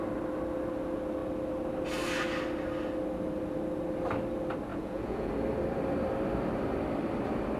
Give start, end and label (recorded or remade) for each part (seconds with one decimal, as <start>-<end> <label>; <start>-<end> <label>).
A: 0.0-4.7 recorded; 4.7-5.3 remade; 5.3-7.6 recorded